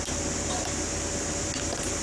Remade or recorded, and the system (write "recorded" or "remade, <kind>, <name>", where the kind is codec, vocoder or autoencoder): recorded